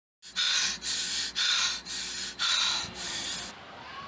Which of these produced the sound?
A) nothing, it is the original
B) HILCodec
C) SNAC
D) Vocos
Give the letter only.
A